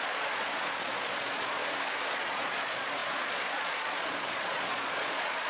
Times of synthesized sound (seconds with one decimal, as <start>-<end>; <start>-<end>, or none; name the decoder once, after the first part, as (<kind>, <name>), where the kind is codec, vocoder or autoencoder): 0.0-1.6 (vocoder, Vocos); 2.1-5.5